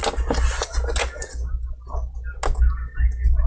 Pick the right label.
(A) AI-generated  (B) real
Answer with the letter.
B